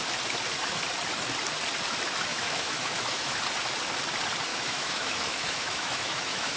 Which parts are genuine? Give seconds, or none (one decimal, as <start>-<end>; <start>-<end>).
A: 0.0-2.3; 3.4-4.5